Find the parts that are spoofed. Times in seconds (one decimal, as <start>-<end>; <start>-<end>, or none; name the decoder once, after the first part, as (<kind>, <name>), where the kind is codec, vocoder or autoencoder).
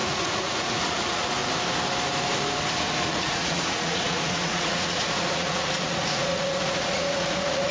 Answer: 0.0-1.4 (vocoder, Vocos); 3.0-7.7